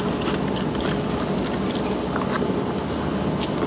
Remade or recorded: recorded